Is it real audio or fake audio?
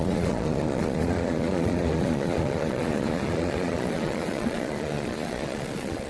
fake